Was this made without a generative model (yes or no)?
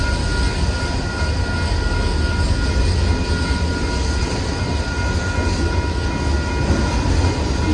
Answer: yes